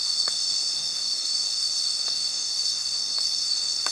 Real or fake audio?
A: fake